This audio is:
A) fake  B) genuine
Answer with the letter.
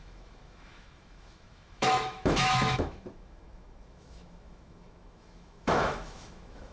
A